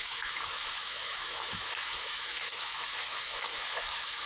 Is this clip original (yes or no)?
no